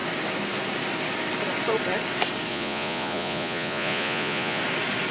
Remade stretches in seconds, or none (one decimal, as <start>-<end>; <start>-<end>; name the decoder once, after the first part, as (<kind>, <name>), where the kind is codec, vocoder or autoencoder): 2.5-4.6 (vocoder, Vocos)